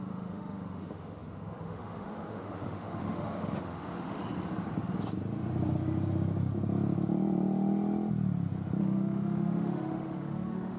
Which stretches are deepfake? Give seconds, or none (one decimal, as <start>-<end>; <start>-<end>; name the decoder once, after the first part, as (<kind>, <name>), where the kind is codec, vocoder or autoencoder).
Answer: 0.0-4.2 (autoencoder, DAC-VAE); 8.8-10.8

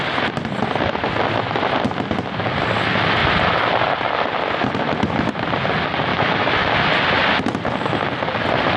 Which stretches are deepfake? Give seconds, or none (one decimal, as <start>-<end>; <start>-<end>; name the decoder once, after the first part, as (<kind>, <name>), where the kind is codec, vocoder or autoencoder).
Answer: 6.1-6.7 (autoencoder, DAC-VAE)

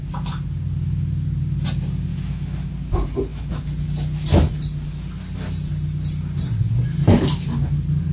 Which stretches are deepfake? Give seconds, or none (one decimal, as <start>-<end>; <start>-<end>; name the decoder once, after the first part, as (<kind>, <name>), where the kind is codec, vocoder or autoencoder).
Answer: 2.1-2.7 (autoencoder, DAC-VAE)

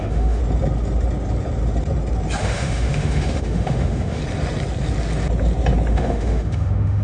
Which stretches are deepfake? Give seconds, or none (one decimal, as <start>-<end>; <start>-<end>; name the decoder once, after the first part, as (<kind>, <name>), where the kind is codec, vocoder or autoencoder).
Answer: 0.0-0.4 (autoencoder, DAC-VAE); 2.4-4.2; 5.9-7.0

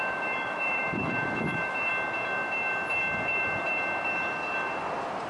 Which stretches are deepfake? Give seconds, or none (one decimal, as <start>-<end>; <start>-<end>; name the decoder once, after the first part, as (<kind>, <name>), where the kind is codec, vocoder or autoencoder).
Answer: 0.0-1.9 (autoencoder, DAC-VAE)

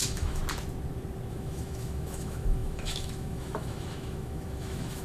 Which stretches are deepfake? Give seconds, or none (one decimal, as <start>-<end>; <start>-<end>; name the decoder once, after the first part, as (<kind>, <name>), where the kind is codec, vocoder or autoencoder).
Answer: 0.0-0.4 (autoencoder, DAC-VAE); 1.3-5.0

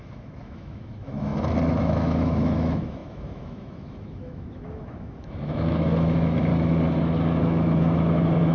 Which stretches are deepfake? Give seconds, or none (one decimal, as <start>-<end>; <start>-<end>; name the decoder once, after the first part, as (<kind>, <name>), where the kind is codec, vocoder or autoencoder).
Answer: 0.0-1.3 (autoencoder, DAC-VAE); 1.8-6.5; 7.4-8.5

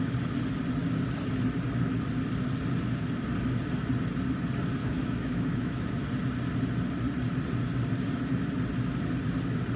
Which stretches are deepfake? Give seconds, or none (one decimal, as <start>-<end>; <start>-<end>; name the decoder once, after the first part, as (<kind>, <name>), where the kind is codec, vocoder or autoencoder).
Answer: 4.8-5.9 (autoencoder, DAC-VAE)